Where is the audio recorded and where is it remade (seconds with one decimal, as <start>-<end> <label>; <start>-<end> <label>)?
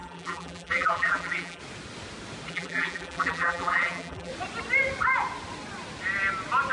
0.0-1.6 remade; 1.6-2.5 recorded; 2.5-4.3 remade; 4.3-6.7 recorded